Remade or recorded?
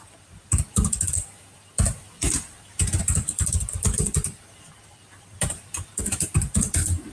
remade